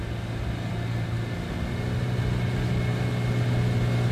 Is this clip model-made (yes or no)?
no